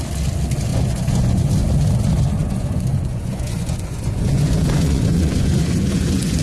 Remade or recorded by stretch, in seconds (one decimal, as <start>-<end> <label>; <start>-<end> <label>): 0.0-0.7 recorded; 0.7-1.5 remade; 1.5-2.4 recorded; 2.4-6.4 remade